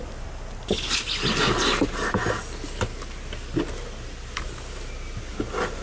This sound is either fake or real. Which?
real